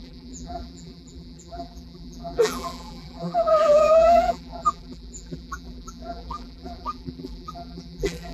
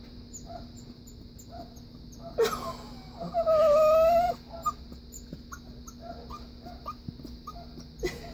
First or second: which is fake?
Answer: first